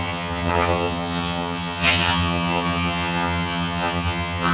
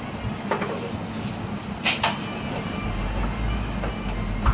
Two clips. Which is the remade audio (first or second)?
first